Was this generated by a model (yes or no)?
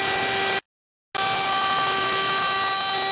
no